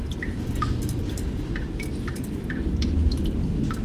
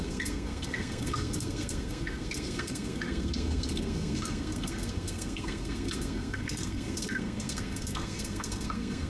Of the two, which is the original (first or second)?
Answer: first